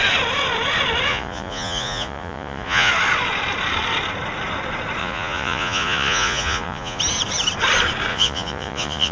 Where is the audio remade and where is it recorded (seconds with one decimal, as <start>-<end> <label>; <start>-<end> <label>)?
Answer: 0.0-1.1 recorded; 1.1-2.9 remade; 2.9-5.0 recorded; 5.0-7.0 remade; 7.0-8.1 recorded; 8.1-9.1 remade